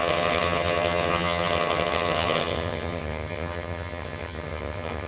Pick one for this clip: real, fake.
fake